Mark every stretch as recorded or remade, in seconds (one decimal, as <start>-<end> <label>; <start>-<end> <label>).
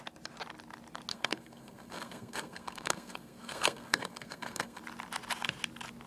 0.0-1.1 recorded; 1.1-4.8 remade; 4.8-6.1 recorded